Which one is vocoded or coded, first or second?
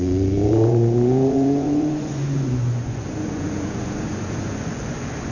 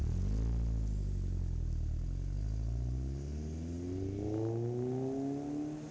first